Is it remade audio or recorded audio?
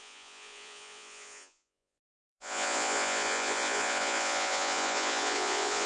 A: remade